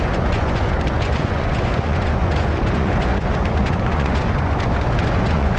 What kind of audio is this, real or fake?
fake